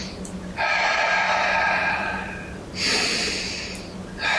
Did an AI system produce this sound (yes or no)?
no